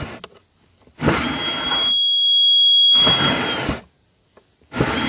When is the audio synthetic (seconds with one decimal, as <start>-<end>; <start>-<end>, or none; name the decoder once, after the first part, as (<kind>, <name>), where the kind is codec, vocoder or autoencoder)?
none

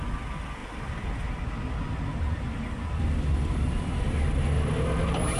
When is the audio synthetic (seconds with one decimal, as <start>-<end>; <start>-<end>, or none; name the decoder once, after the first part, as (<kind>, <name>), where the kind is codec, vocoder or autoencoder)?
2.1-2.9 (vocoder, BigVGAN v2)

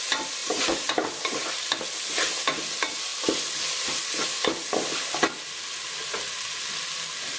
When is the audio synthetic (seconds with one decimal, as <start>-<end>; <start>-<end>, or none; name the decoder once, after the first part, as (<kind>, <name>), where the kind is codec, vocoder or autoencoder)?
0.4-1.4 (vocoder, BigVGAN v2)